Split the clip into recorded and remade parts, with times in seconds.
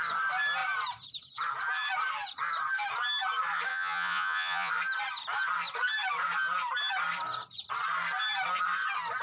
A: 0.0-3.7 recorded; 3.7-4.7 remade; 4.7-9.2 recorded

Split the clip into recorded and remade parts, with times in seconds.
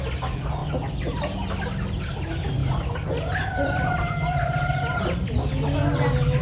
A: 0.0-6.4 recorded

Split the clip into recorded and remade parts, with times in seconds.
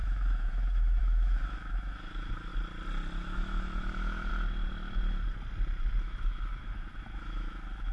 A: 0.0-2.5 remade; 2.5-3.2 recorded; 3.2-4.3 remade; 4.3-6.0 recorded; 6.0-7.9 remade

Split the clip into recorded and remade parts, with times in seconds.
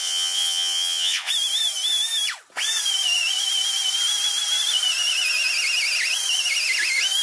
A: 0.0-1.3 remade; 1.3-7.2 recorded